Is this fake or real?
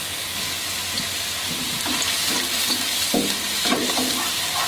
real